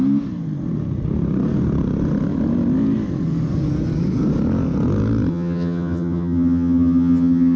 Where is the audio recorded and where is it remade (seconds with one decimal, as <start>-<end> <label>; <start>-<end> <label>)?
0.0-5.3 recorded; 5.3-7.6 remade